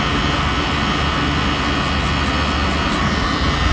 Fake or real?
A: real